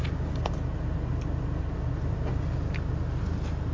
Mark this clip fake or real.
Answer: real